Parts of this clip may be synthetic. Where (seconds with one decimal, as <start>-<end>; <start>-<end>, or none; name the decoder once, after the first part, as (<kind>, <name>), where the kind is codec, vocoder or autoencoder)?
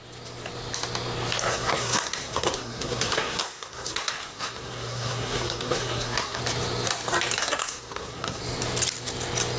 1.5-6.4 (codec, SNAC); 7.4-8.4